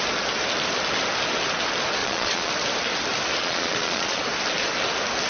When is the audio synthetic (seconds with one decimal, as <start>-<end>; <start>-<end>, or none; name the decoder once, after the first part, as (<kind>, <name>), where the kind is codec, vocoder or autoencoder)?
2.0-2.5 (vocoder, Vocos); 3.4-4.2